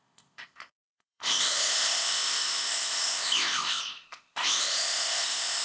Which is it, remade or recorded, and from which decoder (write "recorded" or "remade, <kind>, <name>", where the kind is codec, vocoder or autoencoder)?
remade, codec, ZipCodec